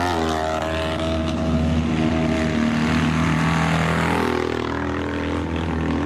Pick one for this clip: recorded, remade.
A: recorded